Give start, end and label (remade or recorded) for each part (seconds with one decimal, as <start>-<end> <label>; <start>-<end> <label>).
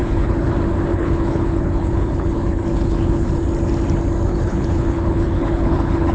0.0-0.5 remade; 0.5-0.9 recorded; 0.9-3.3 remade; 3.3-4.3 recorded; 4.3-6.1 remade